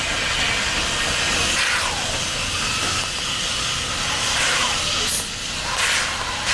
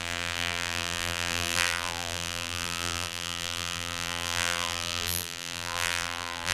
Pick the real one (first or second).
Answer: first